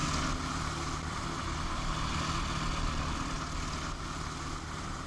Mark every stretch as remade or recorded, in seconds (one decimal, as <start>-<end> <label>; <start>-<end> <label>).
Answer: 0.0-5.1 recorded